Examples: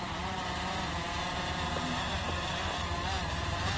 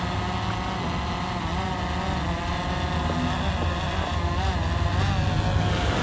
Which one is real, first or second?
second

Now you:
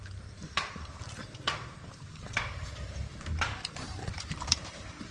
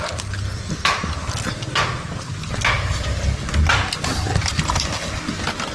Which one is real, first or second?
second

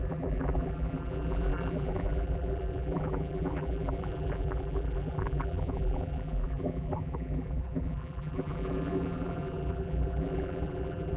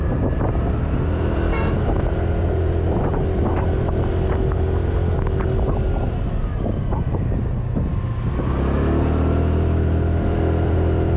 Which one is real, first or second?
second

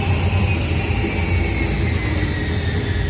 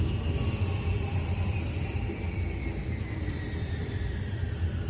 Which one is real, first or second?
first